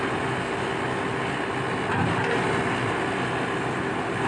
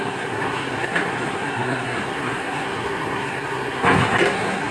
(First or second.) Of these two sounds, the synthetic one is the second